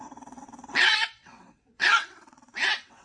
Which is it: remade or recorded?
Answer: remade